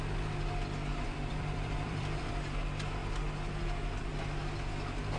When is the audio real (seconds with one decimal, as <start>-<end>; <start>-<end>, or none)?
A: 0.0-0.9; 2.3-5.2